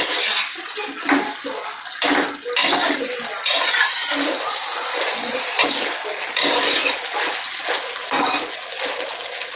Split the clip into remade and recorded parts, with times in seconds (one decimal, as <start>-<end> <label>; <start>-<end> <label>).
0.0-2.6 recorded; 2.6-5.9 remade; 5.9-9.6 recorded